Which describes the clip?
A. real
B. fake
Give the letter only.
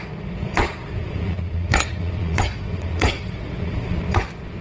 B